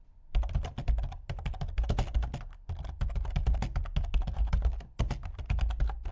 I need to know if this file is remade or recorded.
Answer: recorded